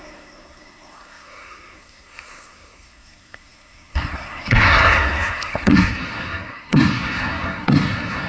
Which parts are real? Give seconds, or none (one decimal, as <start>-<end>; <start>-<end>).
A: none